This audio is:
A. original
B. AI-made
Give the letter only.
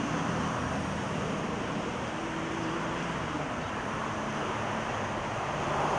B